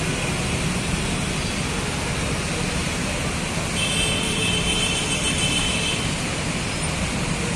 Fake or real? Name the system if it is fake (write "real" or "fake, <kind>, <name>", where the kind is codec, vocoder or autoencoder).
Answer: real